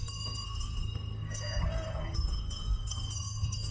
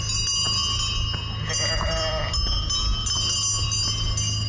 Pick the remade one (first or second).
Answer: first